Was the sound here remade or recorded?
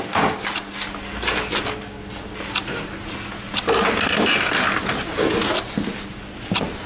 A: recorded